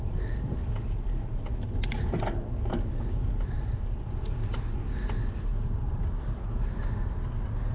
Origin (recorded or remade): recorded